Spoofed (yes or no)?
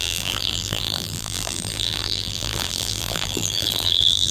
yes